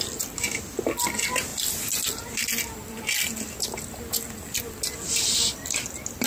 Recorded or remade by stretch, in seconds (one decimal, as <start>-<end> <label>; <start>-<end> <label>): 0.0-6.3 recorded

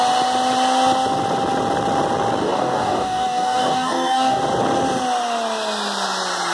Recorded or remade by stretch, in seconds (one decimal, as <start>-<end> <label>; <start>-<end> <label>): 0.0-2.4 recorded; 2.4-4.4 remade; 4.4-6.5 recorded

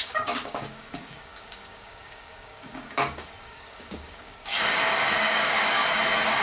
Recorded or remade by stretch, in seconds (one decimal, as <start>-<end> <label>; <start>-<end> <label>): 0.0-5.8 remade; 5.8-6.4 recorded

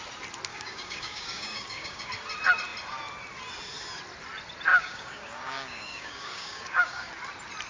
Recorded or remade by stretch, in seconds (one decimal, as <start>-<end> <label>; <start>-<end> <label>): 0.0-0.5 recorded; 0.5-2.1 remade; 2.1-4.7 recorded; 4.7-7.1 remade; 7.1-7.7 recorded

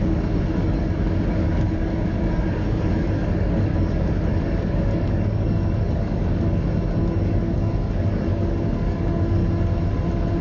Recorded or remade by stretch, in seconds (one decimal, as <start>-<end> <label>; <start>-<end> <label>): 0.0-9.4 remade; 9.4-10.4 recorded

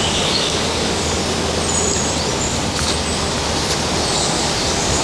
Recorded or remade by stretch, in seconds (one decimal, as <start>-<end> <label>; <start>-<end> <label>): 0.0-1.2 remade; 1.2-4.2 recorded; 4.2-5.0 remade

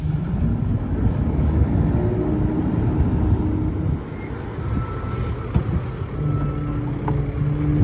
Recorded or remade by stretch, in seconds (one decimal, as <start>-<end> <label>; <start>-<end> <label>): 0.0-0.5 recorded; 0.5-1.9 remade; 1.9-7.8 recorded